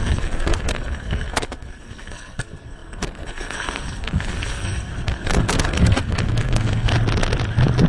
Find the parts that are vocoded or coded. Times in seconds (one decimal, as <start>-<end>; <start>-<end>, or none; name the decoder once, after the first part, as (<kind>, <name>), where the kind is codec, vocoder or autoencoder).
0.0-6.9 (codec, SNAC)